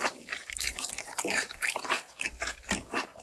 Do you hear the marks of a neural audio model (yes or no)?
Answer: yes